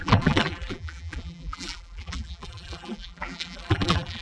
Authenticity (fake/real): fake